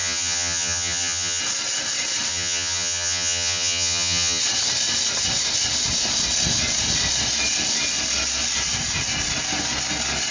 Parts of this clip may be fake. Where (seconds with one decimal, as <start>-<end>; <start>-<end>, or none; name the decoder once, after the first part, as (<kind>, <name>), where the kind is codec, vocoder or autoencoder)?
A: 0.0-1.4 (vocoder, HiFi-GAN); 2.3-4.4